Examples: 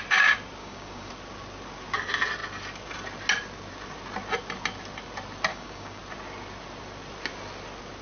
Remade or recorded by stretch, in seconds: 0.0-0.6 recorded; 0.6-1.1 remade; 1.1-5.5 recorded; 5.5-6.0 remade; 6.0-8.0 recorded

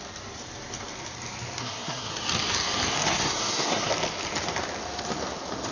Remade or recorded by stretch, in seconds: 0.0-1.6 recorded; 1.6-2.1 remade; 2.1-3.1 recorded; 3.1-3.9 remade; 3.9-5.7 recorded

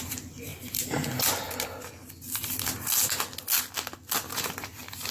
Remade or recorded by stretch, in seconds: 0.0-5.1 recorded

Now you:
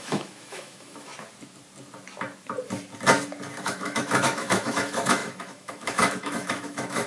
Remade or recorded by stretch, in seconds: 0.0-1.1 remade; 1.1-3.6 recorded; 3.6-7.1 remade

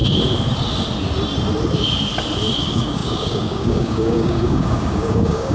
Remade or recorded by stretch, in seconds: 0.0-2.6 recorded; 2.6-5.5 remade